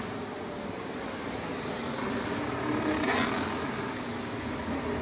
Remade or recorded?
recorded